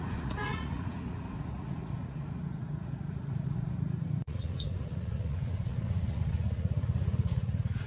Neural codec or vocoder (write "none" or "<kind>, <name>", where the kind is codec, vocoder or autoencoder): vocoder, Vocos